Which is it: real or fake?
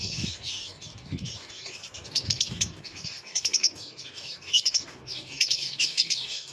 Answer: fake